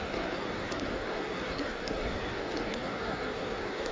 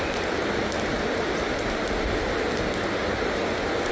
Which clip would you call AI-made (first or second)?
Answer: first